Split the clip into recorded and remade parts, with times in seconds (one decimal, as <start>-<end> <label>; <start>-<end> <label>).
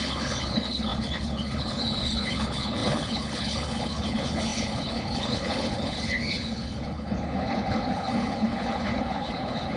0.0-9.8 remade